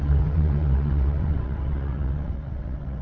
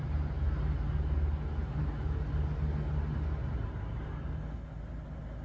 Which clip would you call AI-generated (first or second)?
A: first